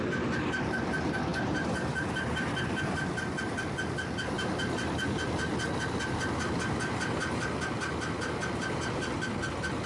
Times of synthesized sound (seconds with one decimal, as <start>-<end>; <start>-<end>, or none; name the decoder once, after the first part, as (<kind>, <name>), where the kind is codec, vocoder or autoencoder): none